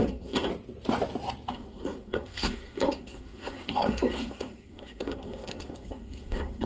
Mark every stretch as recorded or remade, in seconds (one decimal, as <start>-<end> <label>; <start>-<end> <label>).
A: 0.0-0.5 remade; 0.5-1.5 recorded; 1.5-6.7 remade